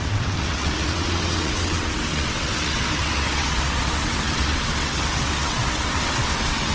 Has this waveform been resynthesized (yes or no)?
yes